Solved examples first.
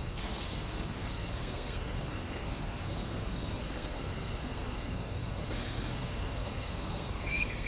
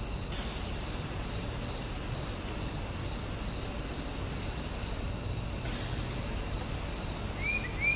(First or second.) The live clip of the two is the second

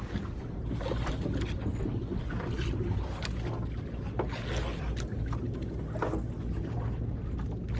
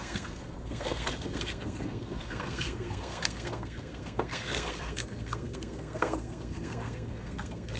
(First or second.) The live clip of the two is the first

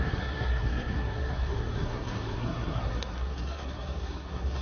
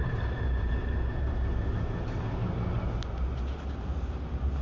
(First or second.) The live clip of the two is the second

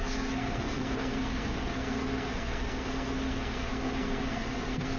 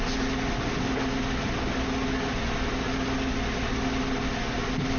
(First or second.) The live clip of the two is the second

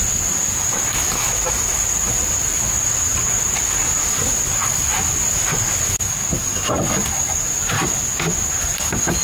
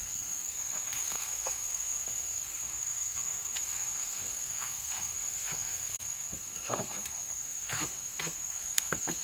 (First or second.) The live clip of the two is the first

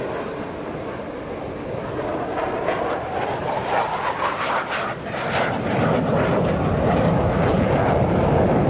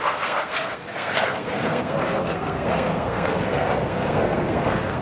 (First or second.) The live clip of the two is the first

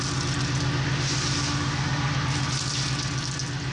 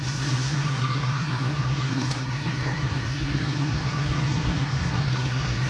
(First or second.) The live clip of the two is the first